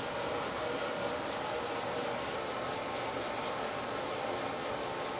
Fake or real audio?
real